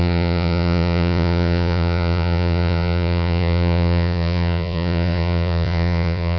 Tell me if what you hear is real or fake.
fake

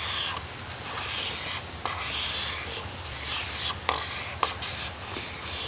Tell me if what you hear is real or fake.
real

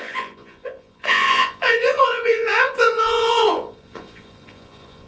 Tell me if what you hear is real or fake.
fake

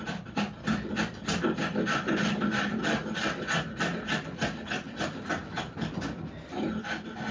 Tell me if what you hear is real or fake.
real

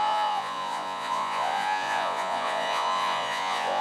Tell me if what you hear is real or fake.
fake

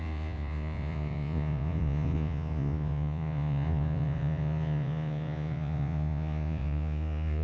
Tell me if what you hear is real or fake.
fake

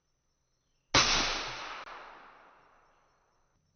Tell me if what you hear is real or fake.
real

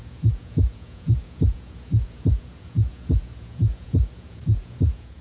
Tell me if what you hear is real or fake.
fake